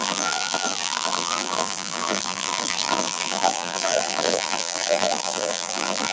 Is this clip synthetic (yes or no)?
yes